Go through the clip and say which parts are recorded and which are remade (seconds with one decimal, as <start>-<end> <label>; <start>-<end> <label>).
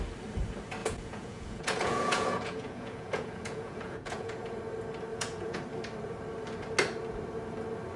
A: 0.0-0.8 recorded; 0.8-4.6 remade; 4.6-5.1 recorded; 5.1-5.6 remade; 5.6-8.0 recorded